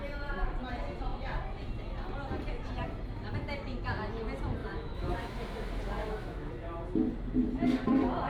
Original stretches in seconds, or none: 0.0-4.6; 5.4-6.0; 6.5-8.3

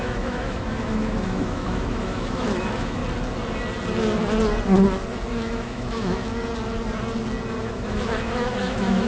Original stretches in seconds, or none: 3.0-5.3; 6.3-7.6

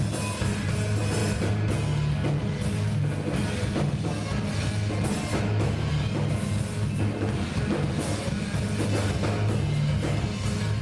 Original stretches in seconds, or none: 0.0-5.3; 5.9-10.8